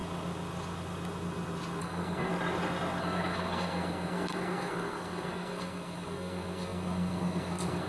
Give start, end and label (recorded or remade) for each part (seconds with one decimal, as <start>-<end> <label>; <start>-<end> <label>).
0.0-1.8 recorded; 1.8-2.3 remade; 2.3-3.0 recorded; 3.0-7.9 remade